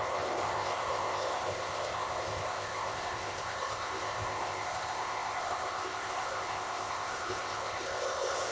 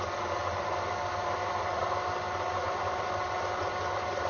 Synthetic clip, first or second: first